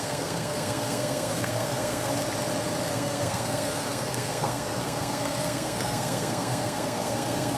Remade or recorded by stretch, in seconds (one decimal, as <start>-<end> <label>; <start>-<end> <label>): 0.0-2.1 remade; 2.1-2.8 recorded; 2.8-7.6 remade

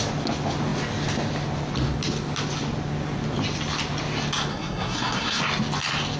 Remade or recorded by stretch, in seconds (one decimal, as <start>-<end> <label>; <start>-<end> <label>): 0.0-4.5 recorded; 4.5-5.4 remade; 5.4-6.2 recorded

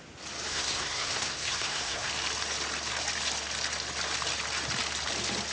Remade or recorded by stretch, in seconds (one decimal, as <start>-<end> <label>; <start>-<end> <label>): 0.0-0.5 recorded; 0.5-2.1 remade; 2.1-5.5 recorded

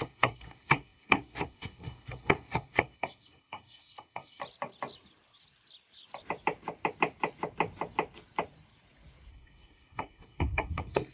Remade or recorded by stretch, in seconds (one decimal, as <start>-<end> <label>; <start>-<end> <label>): 0.0-4.4 remade; 4.4-9.3 recorded; 9.3-11.1 remade